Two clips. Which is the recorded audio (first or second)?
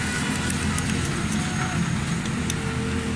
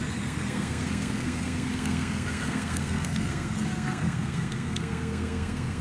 first